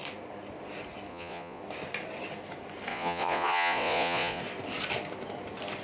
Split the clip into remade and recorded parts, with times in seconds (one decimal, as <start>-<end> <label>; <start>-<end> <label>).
0.0-1.1 recorded; 1.1-1.6 remade; 1.6-2.9 recorded; 2.9-4.4 remade; 4.4-5.8 recorded